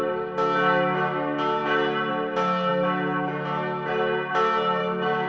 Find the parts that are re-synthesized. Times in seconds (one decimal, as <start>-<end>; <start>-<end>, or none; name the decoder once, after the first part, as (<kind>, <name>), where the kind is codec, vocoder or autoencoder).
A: 4.8-5.3 (codec, DAC)

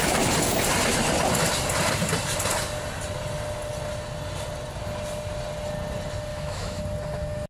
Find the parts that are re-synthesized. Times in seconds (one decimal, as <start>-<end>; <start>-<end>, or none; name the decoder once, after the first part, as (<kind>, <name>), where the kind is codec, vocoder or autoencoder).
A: 6.3-6.8 (autoencoder, DAC-VAE)